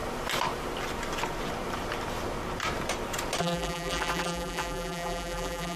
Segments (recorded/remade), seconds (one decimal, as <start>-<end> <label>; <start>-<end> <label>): 0.0-3.4 recorded; 3.4-5.8 remade